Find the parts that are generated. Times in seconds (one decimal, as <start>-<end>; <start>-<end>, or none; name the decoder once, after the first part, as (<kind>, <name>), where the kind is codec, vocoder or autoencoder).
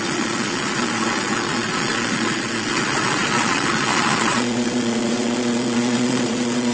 0.0-6.7 (vocoder, Vocos)